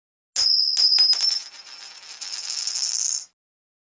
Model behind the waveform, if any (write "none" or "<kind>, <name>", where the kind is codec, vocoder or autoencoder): none